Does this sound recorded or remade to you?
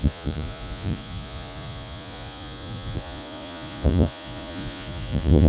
remade